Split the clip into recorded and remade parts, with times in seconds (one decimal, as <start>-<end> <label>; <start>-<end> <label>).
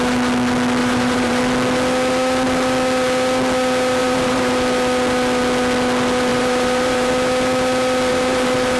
0.0-0.8 recorded; 0.8-1.4 remade; 1.4-4.0 recorded; 4.0-4.5 remade; 4.5-6.3 recorded; 6.3-7.1 remade; 7.1-8.1 recorded; 8.1-8.8 remade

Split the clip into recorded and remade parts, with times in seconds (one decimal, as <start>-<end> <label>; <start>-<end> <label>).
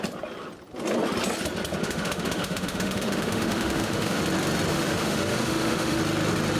0.0-1.8 recorded; 1.8-4.2 remade; 4.2-4.7 recorded; 4.7-6.0 remade; 6.0-6.6 recorded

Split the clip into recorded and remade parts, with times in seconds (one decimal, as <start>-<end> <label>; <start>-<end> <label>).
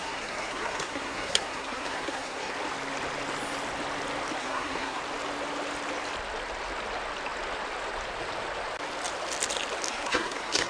0.0-2.5 remade; 2.5-4.4 recorded; 4.4-5.0 remade; 5.0-9.9 recorded; 9.9-10.7 remade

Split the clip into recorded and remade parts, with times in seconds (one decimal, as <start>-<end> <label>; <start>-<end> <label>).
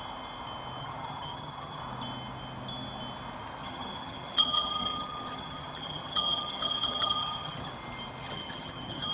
0.0-0.8 recorded; 0.8-1.8 remade; 1.8-3.6 recorded; 3.6-7.7 remade; 7.7-8.2 recorded; 8.2-9.1 remade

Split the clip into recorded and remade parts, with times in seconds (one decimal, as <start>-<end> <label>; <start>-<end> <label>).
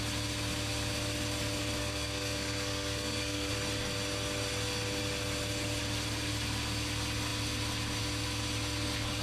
0.0-1.8 recorded; 1.8-3.5 remade; 3.5-9.2 recorded